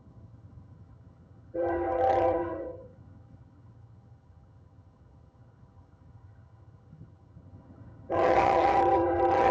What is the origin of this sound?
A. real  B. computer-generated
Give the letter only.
B